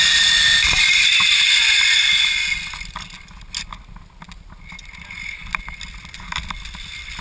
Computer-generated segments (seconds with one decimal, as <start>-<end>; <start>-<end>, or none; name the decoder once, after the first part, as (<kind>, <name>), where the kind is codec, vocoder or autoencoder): none